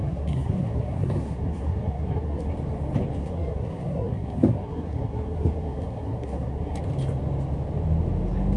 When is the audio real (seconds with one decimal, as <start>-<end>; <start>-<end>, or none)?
2.5-3.2; 6.8-8.6